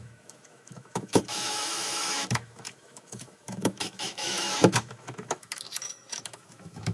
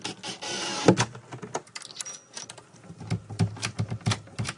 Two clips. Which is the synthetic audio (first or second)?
first